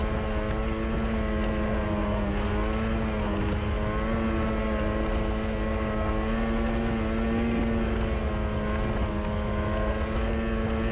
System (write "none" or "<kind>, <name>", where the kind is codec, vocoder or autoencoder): none